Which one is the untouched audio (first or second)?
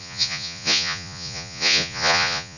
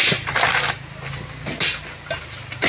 second